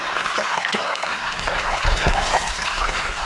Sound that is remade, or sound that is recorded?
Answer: remade